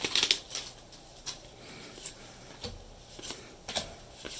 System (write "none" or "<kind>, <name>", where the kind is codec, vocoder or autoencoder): none